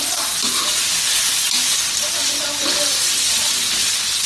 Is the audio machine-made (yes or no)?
no